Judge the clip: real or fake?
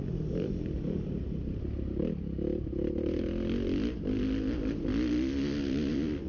real